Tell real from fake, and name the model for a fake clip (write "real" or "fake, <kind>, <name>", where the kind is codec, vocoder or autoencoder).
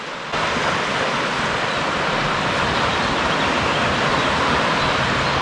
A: real